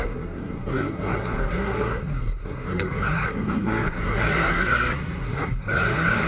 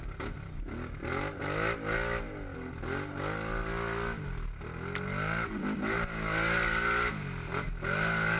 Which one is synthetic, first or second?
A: first